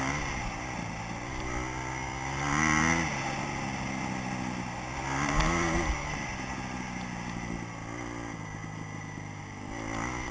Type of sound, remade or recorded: recorded